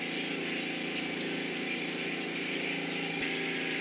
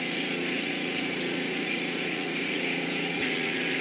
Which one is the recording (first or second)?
first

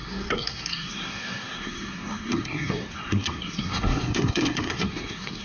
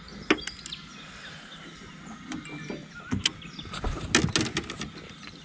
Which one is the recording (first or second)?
second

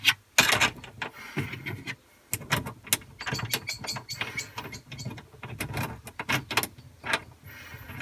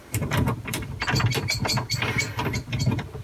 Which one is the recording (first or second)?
first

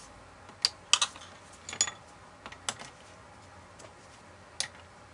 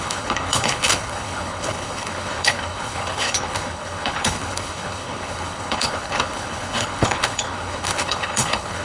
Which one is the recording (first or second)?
first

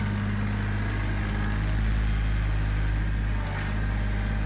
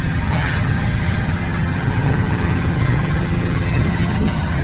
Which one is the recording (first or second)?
first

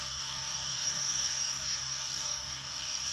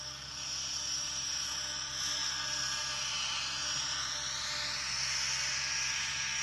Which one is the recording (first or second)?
second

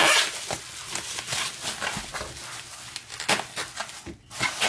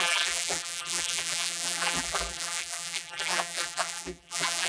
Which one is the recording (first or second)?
first